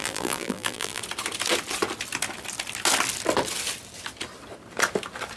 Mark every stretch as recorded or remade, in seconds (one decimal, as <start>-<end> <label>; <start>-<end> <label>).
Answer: 0.0-1.0 remade; 1.0-5.4 recorded